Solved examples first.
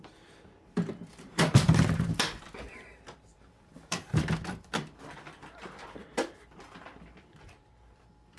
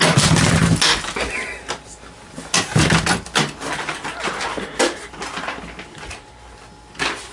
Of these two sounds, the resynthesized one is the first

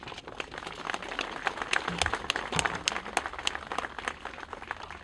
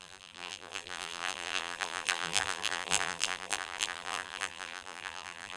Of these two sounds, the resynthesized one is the second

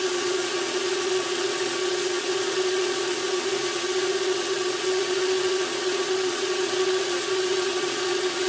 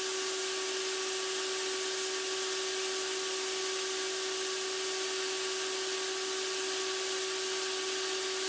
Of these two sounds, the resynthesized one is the first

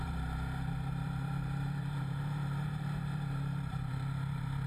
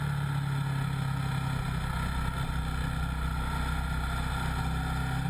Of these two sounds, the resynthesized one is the first